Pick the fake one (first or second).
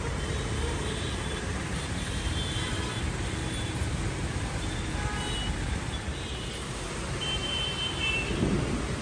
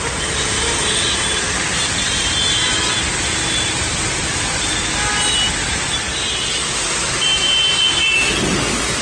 first